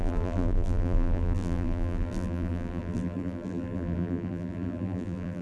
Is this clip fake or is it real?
fake